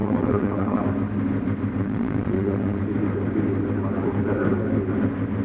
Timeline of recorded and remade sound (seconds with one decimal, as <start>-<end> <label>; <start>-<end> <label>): 0.0-0.8 remade; 0.8-1.8 recorded; 1.8-2.8 remade; 2.8-5.4 recorded